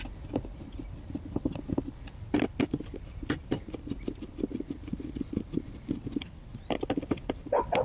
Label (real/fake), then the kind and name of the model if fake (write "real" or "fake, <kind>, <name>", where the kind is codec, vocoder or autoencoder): real